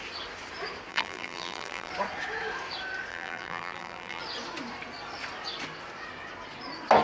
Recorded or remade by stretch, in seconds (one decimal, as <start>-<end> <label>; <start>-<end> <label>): 0.0-0.9 recorded; 0.9-1.9 remade; 1.9-3.1 recorded; 3.1-4.2 remade; 4.2-7.0 recorded